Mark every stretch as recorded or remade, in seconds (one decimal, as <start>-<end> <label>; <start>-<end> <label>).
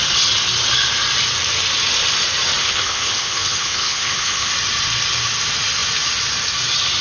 0.0-2.6 recorded; 2.6-4.5 remade; 4.5-7.0 recorded